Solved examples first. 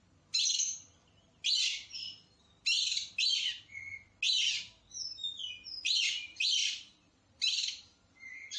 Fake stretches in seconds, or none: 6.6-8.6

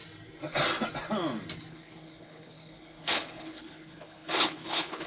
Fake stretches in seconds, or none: 1.7-5.1

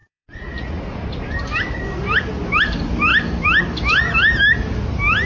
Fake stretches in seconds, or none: 0.0-0.8

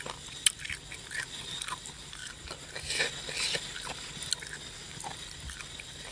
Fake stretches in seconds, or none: none